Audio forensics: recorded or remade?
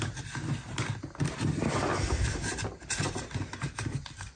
recorded